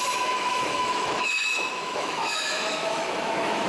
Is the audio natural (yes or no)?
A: no